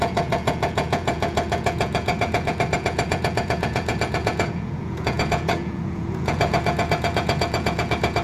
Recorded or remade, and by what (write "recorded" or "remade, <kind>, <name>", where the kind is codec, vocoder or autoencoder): remade, vocoder, Vocos